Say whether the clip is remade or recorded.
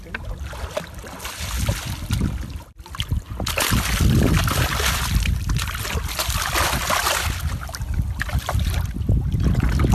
recorded